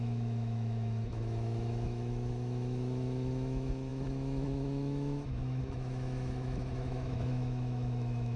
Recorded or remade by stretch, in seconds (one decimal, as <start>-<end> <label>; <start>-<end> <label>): 0.0-8.4 remade